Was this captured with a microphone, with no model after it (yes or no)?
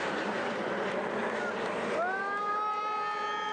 yes